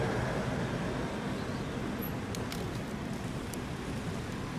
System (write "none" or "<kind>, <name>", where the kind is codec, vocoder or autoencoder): none